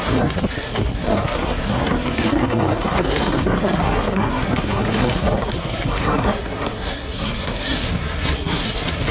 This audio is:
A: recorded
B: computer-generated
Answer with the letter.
B